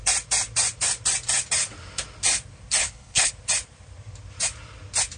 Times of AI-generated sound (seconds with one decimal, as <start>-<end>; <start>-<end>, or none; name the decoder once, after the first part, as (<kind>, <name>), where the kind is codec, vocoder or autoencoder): 2.8-3.3 (codec, HILCodec)